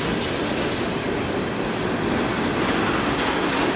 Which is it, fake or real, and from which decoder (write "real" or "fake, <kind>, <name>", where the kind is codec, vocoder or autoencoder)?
real